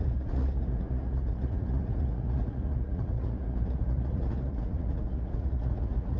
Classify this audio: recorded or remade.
remade